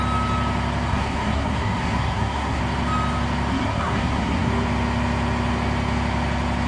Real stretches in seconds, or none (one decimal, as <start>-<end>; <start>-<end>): 0.0-0.9; 2.6-3.5; 4.5-6.7